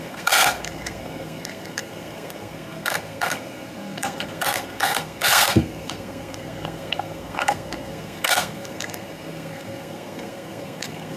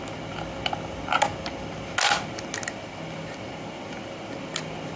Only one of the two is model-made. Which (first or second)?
first